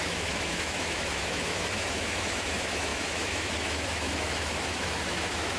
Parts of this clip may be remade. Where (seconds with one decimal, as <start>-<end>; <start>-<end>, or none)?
0.0-5.6

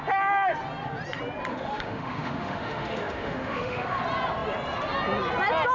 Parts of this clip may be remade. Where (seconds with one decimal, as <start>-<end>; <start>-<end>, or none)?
1.5-4.0

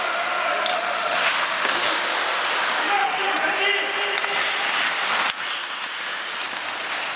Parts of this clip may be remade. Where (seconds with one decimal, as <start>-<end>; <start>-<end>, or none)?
0.7-2.0; 2.8-3.3

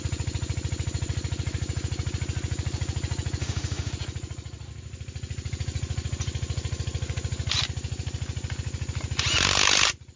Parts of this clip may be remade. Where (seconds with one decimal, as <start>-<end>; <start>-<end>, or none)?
3.4-3.9

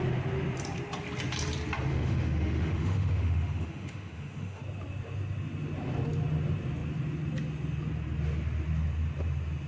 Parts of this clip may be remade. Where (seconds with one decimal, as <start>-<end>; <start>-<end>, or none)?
1.9-4.6

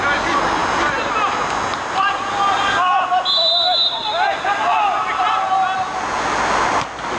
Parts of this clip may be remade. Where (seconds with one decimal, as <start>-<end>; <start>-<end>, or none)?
none

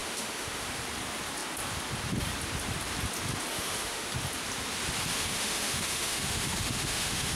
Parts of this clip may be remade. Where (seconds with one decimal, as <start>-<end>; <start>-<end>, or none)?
0.0-0.7; 3.5-4.1; 5.1-7.4